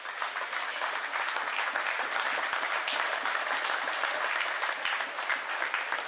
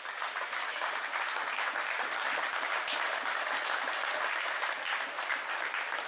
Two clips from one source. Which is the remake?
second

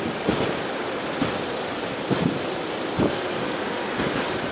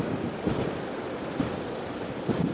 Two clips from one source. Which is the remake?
second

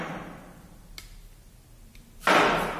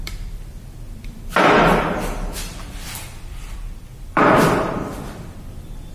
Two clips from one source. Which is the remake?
second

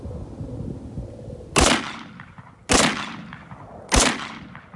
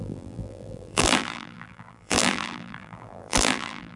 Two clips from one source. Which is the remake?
second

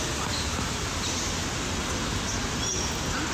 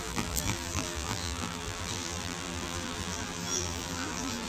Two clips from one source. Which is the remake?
second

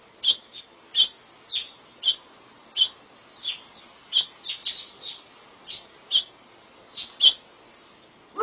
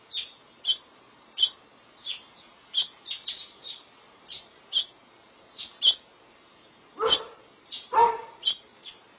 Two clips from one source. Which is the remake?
second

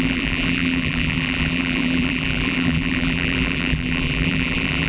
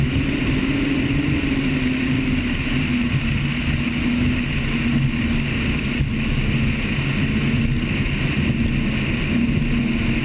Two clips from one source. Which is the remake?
first